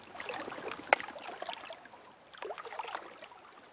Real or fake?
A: real